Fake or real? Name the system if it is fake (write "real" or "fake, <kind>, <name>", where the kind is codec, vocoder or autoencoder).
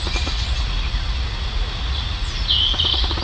fake, vocoder, Vocos